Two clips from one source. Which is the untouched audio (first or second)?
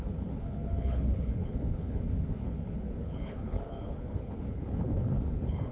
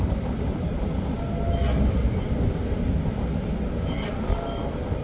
second